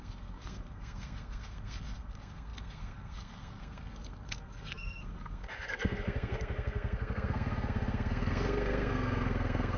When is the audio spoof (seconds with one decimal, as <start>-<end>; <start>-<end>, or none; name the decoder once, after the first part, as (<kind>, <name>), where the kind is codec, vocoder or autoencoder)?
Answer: 0.0-9.8 (codec, SNAC)